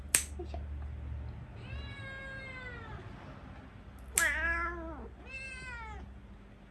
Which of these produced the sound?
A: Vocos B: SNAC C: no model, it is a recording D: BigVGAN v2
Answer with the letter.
C